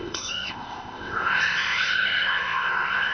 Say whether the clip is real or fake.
fake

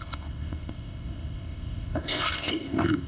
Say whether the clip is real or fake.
fake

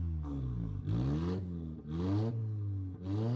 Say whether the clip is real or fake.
real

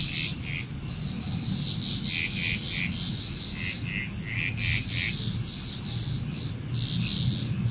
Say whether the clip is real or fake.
real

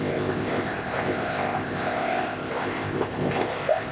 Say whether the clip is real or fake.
fake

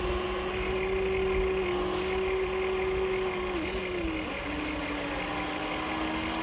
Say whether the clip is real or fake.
real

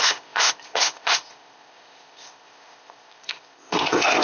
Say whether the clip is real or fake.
fake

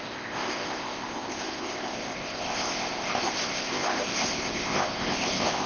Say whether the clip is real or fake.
fake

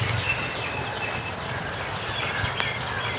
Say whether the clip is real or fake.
real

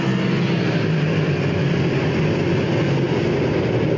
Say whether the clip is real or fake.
real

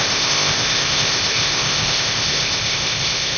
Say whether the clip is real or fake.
fake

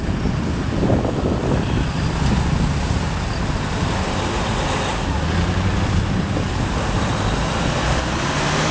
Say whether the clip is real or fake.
real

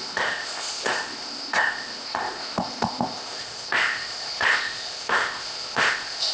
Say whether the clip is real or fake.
fake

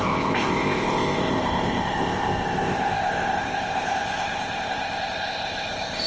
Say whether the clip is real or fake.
fake